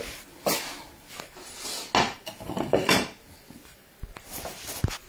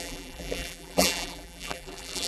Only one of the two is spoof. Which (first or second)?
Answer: second